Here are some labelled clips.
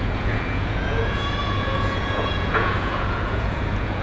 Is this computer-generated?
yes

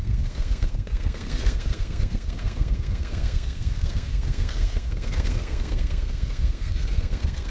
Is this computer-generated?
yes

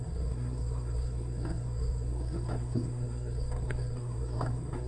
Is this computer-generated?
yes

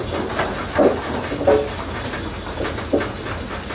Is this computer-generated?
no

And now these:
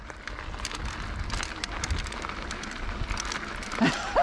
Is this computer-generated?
no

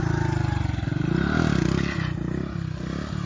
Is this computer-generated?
no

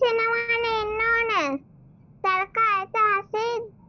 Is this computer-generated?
no